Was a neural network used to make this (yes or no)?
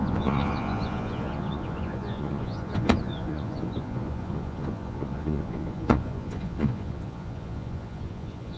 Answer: yes